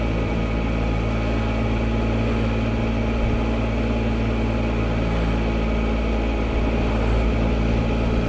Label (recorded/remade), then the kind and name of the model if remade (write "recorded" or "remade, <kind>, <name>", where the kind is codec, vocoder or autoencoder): recorded